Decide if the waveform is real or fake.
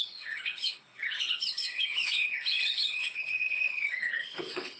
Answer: fake